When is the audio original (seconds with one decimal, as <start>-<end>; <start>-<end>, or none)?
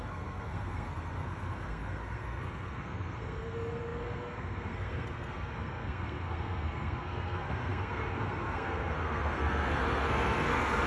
none